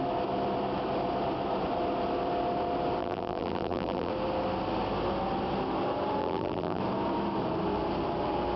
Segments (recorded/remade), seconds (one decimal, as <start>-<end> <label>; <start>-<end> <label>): 0.0-3.0 recorded; 3.0-4.1 remade; 4.1-6.2 recorded; 6.2-6.8 remade; 6.8-8.6 recorded